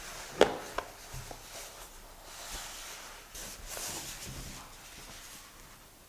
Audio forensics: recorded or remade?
recorded